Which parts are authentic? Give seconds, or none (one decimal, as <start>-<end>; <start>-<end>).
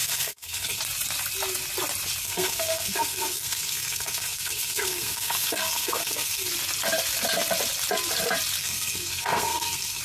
0.8-2.2; 6.5-8.6